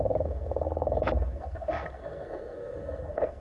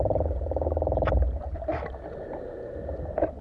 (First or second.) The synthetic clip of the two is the first